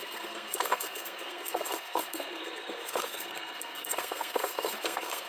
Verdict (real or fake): fake